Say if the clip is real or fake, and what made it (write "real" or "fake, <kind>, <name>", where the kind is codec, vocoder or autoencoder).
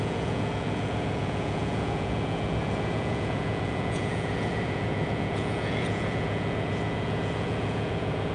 fake, vocoder, Vocos